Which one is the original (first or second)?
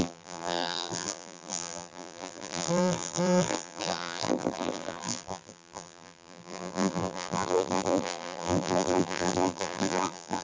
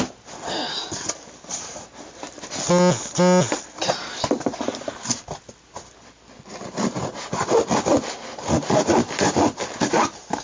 second